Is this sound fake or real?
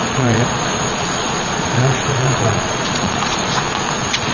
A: fake